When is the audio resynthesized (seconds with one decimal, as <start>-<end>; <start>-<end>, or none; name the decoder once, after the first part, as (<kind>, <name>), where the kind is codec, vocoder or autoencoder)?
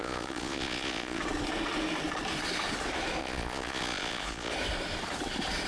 0.0-1.2 (vocoder, Vocos); 3.2-4.5